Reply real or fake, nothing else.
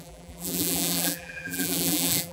fake